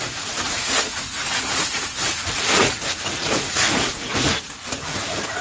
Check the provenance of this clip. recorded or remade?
remade